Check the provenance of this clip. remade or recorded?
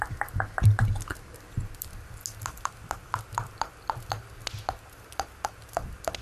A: recorded